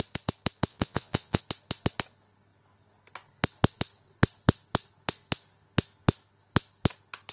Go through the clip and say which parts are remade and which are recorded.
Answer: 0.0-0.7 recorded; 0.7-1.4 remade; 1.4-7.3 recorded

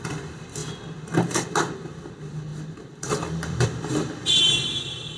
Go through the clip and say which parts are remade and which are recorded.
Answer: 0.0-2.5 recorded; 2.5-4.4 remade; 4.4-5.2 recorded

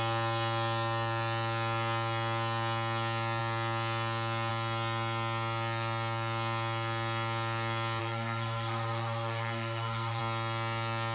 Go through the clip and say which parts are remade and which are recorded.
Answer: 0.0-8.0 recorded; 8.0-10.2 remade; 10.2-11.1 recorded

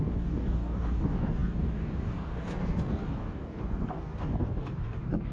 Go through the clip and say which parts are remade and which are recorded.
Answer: 0.0-5.3 remade